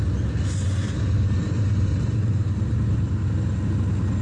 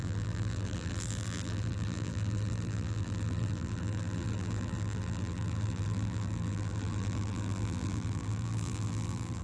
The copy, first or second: second